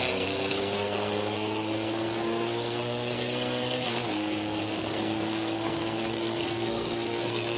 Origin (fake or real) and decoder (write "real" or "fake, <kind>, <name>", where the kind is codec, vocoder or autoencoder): fake, codec, SNAC